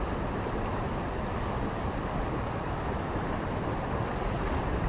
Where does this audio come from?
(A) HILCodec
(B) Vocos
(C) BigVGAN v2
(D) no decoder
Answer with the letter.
D